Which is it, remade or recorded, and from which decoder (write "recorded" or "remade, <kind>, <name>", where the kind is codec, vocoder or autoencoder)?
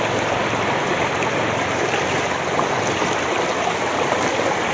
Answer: recorded